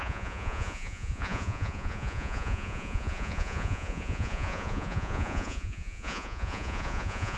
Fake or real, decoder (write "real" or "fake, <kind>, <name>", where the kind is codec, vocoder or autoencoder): fake, vocoder, Vocos